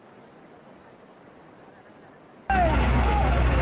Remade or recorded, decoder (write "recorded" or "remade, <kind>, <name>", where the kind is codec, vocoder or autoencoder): recorded